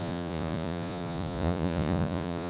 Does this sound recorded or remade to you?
remade